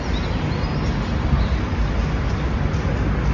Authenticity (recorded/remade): recorded